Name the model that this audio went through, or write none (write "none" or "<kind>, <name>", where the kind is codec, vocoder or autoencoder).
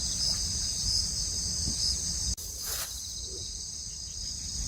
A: vocoder, BigVGAN v2